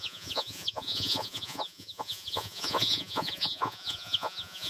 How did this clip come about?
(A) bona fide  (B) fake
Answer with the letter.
B